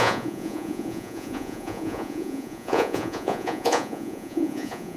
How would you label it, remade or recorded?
remade